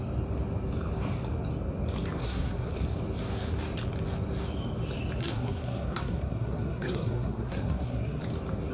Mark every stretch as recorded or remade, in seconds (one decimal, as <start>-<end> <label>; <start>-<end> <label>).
0.0-2.2 recorded; 2.2-2.7 remade; 2.7-5.2 recorded; 5.2-8.2 remade; 8.2-8.7 recorded